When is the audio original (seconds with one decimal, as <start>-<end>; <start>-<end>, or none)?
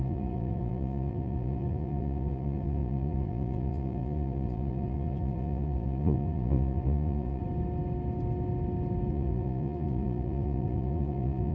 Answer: 7.4-9.1